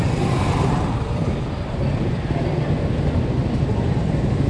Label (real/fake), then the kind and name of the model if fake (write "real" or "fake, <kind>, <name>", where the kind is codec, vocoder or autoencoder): fake, vocoder, BigVGAN v2